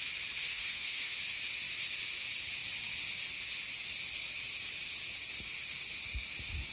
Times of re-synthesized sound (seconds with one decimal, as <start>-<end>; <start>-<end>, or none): 0.4-1.2